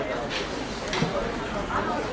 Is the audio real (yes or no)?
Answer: yes